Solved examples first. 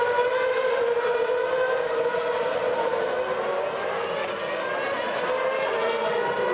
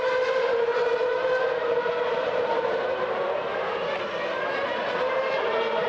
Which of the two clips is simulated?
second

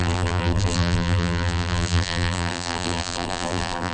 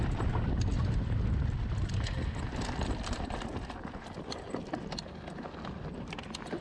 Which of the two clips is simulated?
first